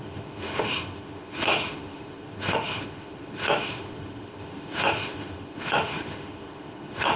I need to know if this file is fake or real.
fake